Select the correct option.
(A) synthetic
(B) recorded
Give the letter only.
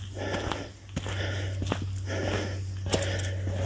B